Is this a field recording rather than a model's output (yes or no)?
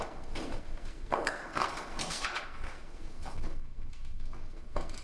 no